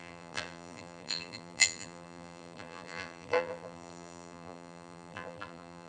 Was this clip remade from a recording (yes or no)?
yes